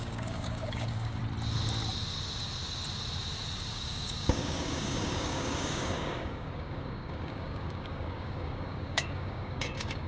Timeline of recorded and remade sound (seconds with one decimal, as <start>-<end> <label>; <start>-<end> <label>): 0.0-1.2 remade; 1.2-3.7 recorded; 3.7-10.1 remade